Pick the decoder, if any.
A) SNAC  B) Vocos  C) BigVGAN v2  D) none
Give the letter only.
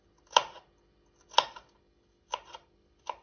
D